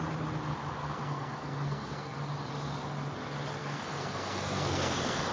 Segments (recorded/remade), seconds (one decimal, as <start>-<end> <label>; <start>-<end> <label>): 0.0-0.8 recorded; 0.8-2.2 remade; 2.2-3.6 recorded; 3.6-5.3 remade